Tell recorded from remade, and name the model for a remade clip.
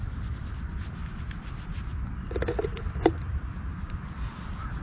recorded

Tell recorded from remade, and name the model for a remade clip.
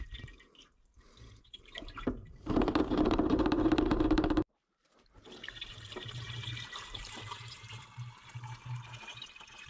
remade, vocoder, BigVGAN v2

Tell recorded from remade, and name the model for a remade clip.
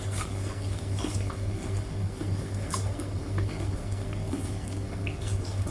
remade, codec, SNAC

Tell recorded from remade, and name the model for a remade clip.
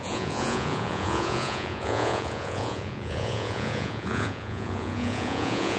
remade, vocoder, Vocos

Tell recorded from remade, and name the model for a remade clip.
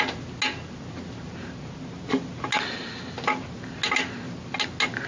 recorded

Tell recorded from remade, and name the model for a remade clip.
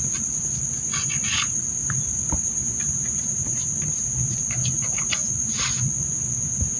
recorded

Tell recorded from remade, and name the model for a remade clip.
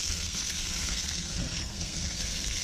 remade, codec, SNAC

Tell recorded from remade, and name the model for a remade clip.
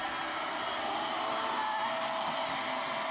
recorded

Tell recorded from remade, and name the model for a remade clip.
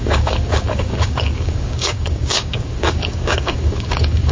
remade, codec, DAC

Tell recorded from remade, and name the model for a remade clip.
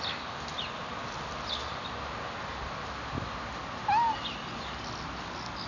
recorded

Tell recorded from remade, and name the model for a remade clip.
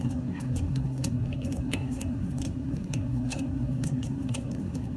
remade, codec, SNAC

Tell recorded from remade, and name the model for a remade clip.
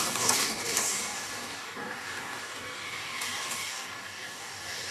remade, codec, DAC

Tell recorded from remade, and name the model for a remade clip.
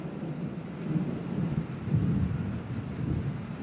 recorded